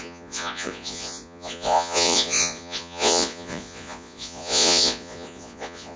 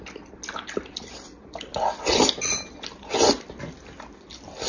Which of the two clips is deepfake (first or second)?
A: first